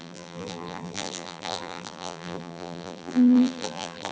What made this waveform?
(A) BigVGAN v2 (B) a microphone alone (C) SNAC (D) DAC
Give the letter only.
A